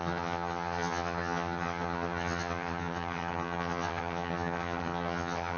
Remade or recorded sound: remade